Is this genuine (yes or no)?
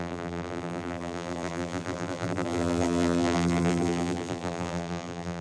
no